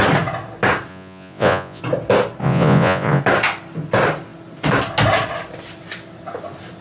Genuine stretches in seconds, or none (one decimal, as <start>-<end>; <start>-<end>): 0.0-0.9; 1.8-2.4; 3.2-6.8